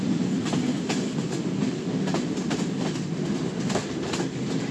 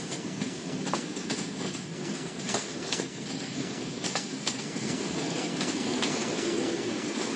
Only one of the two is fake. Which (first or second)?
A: second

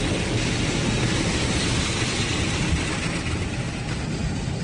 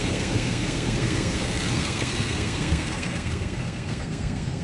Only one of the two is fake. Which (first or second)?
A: second